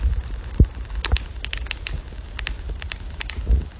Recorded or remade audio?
recorded